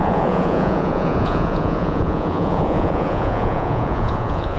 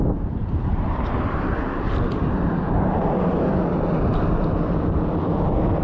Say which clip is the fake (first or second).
first